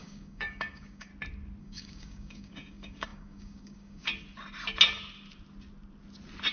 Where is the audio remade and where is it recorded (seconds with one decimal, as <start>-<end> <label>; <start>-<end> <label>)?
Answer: 0.0-1.1 remade; 1.1-1.6 recorded; 1.6-4.1 remade; 4.1-6.5 recorded